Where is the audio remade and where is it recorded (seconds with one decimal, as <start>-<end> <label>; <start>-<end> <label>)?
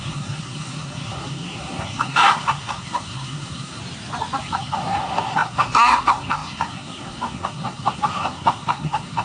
0.0-3.8 remade; 3.8-4.4 recorded; 4.4-9.2 remade